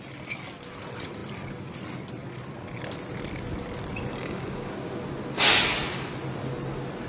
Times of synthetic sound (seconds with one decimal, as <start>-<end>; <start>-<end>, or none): 4.1-4.7